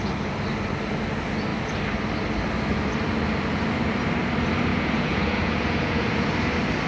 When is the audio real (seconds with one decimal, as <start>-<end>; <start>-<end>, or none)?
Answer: 0.0-4.7; 6.3-6.9